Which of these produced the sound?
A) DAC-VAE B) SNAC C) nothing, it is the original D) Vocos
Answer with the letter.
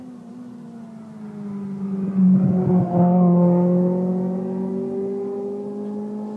C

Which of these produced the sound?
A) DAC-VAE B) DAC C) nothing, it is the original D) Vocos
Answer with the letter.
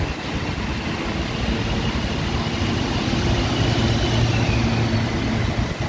C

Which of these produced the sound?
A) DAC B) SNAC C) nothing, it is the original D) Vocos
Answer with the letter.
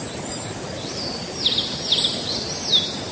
C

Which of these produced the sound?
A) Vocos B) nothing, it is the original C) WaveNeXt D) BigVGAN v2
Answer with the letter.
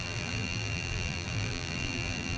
D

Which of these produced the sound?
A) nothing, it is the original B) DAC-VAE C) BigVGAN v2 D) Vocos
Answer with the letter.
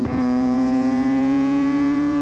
D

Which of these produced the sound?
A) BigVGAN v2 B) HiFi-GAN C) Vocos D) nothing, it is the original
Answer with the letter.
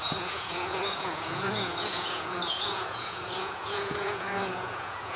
C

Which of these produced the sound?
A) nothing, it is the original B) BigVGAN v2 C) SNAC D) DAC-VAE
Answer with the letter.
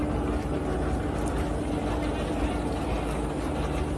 A